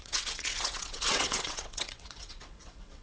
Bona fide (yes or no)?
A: no